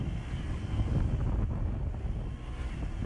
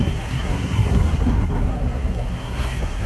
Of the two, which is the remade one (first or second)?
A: second